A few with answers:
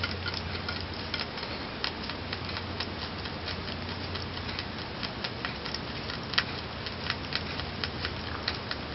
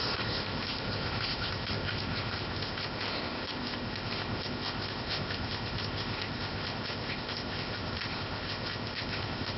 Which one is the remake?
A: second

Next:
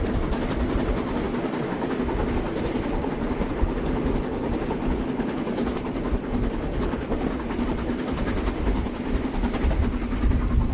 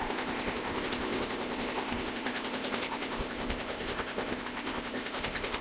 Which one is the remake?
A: second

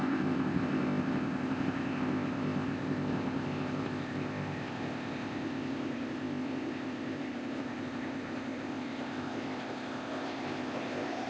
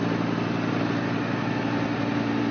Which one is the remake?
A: first